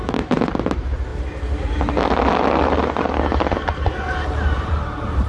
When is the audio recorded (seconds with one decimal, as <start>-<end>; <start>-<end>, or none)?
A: 1.1-4.3